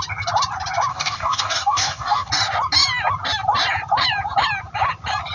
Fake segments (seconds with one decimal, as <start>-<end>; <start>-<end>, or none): 0.9-2.3